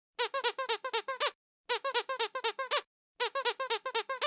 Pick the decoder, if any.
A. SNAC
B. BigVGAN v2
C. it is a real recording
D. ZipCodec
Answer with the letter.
C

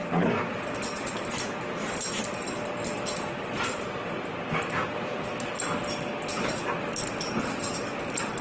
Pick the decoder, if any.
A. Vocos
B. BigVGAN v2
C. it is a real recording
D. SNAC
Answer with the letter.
C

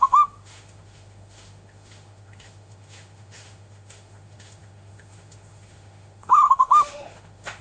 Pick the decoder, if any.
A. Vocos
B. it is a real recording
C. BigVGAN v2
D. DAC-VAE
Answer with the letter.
D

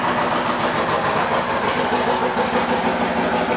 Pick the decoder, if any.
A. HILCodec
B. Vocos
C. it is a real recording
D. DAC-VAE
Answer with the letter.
C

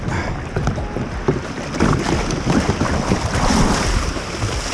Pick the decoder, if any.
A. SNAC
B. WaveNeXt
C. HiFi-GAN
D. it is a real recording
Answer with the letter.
D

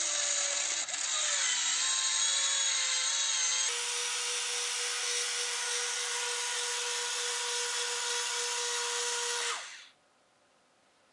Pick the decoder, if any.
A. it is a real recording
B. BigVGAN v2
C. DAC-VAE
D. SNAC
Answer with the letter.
A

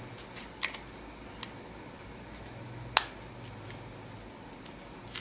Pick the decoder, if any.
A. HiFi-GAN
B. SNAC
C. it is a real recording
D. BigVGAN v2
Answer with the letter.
C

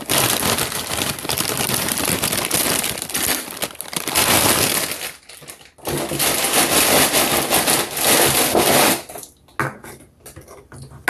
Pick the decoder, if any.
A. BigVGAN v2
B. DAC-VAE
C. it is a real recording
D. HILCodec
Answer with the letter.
C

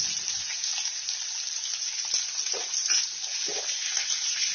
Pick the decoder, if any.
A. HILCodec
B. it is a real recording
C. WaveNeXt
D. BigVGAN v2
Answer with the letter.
B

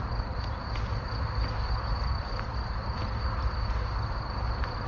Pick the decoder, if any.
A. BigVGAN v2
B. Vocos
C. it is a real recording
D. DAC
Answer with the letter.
C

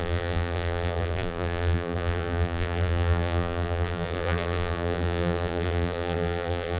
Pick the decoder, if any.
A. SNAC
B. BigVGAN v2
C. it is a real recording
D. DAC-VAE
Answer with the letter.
B